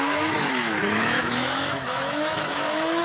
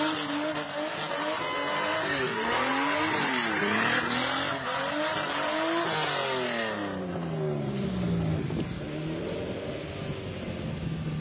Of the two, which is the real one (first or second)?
second